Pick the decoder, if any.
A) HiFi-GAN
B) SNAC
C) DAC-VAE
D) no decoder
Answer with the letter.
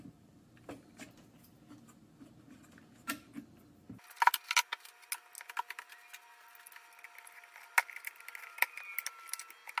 D